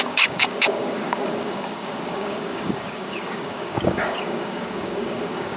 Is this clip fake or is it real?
fake